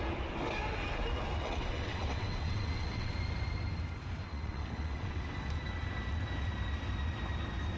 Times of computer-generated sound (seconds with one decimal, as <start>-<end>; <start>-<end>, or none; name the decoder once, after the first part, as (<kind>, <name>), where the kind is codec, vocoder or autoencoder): 1.4-3.1 (vocoder, WaveNeXt); 4.3-5.2